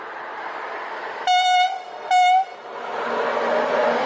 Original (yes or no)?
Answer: yes